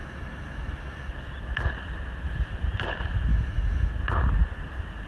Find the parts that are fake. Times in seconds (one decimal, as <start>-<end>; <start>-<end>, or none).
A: 0.0-1.1; 3.3-3.9